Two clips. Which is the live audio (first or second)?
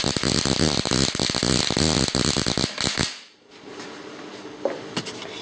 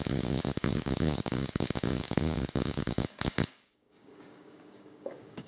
first